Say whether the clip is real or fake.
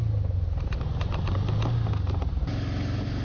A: real